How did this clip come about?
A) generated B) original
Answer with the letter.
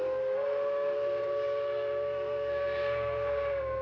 A